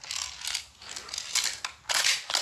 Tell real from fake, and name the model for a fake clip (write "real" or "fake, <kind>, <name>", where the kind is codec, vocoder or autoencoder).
real